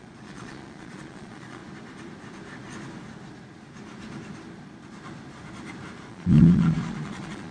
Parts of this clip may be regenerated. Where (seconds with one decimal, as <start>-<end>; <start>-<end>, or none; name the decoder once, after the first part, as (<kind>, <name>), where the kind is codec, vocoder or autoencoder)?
0.0-1.6 (vocoder, Vocos); 6.1-7.5